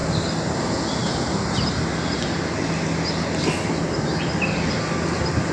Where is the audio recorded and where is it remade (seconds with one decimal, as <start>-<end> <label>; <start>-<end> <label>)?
0.0-5.5 recorded